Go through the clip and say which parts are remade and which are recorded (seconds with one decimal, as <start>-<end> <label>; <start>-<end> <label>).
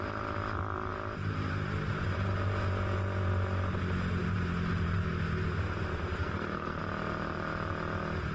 0.0-6.2 recorded; 6.2-6.8 remade; 6.8-8.3 recorded